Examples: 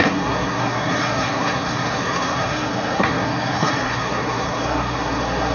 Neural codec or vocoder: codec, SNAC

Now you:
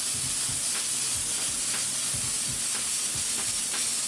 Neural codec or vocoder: none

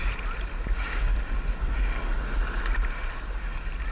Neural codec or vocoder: none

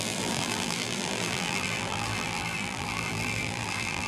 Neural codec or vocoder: vocoder, BigVGAN v2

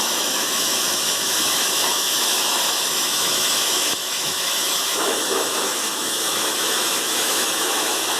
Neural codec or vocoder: autoencoder, DAC-VAE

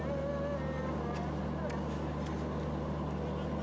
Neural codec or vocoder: none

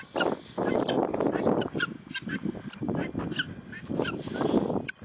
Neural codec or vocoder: none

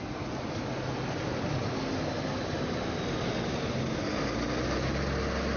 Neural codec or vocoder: none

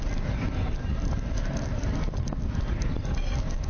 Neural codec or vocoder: none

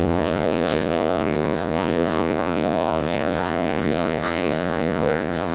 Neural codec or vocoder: vocoder, Vocos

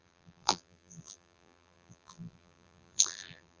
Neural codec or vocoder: vocoder, BigVGAN v2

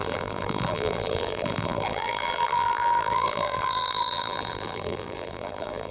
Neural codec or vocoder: vocoder, BigVGAN v2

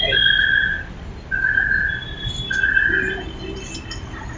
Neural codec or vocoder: none